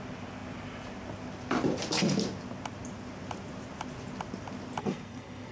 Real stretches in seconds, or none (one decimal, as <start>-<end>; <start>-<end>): 0.0-4.8

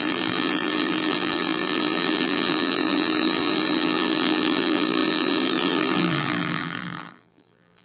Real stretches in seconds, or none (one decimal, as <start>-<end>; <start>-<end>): none